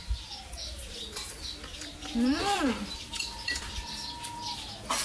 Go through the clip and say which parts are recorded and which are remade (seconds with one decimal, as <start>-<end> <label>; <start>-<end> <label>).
0.0-1.7 recorded; 1.7-5.0 remade